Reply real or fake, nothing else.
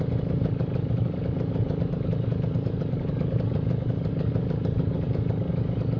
fake